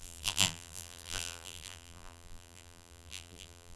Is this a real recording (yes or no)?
no